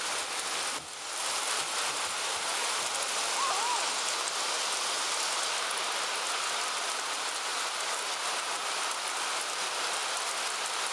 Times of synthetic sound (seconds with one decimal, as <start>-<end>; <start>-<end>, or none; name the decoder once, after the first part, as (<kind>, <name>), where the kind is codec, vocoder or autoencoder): none